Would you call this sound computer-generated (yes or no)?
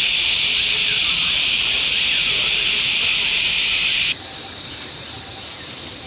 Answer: no